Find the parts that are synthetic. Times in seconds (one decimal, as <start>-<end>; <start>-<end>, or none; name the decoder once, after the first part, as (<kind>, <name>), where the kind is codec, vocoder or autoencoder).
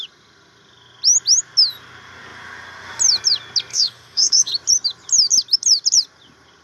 3.7-4.5 (autoencoder, DAC-VAE)